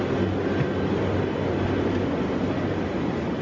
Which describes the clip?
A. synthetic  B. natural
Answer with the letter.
B